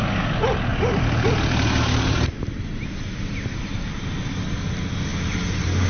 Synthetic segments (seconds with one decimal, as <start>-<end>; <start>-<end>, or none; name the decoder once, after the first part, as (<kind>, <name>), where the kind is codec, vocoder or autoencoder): 0.7-3.8 (vocoder, BigVGAN v2)